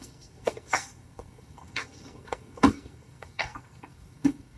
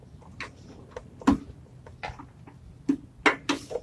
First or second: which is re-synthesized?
first